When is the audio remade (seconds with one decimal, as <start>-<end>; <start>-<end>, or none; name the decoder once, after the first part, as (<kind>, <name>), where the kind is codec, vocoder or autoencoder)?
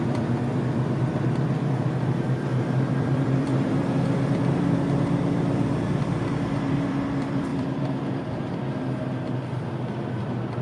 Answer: 0.0-10.6 (vocoder, BigVGAN v2)